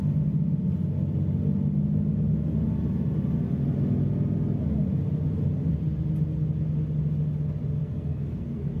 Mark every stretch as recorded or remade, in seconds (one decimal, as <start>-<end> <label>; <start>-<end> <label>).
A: 0.0-7.8 recorded; 7.8-8.8 remade